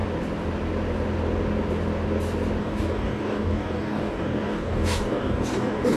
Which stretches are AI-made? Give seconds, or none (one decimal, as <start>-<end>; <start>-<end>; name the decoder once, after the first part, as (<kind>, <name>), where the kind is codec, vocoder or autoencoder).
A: 2.6-6.0 (codec, DAC)